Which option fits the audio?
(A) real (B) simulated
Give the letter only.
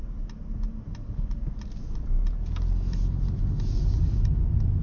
A